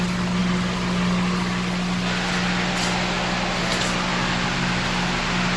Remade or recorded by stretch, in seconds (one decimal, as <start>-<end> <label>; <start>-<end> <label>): 0.0-5.6 recorded